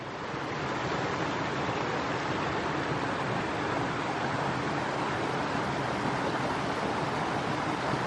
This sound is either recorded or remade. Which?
recorded